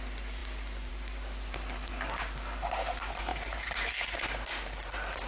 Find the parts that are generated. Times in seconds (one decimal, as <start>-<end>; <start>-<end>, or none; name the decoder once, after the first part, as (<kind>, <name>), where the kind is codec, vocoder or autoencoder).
3.3-3.9 (vocoder, BigVGAN v2); 4.5-5.3